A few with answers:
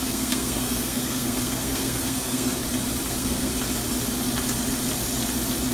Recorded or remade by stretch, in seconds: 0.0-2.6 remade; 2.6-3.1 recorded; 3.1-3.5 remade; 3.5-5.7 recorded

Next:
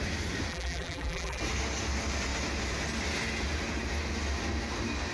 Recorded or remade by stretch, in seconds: 0.0-0.5 recorded; 0.5-1.4 remade; 1.4-5.1 recorded

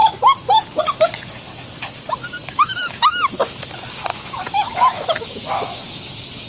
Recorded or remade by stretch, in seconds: 0.0-2.4 recorded; 2.4-3.3 remade; 3.3-4.1 recorded; 4.1-6.1 remade; 6.1-6.5 recorded

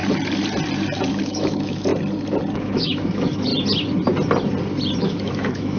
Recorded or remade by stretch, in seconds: 0.0-1.1 recorded; 1.1-1.9 remade; 1.9-2.5 recorded; 2.5-3.5 remade; 3.5-5.0 recorded; 5.0-5.8 remade

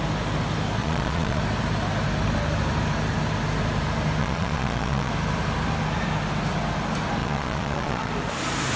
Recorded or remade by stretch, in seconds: 0.0-0.8 recorded; 0.8-1.4 remade; 1.4-4.2 recorded; 4.2-5.1 remade; 5.1-7.2 recorded; 7.2-8.1 remade; 8.1-8.8 recorded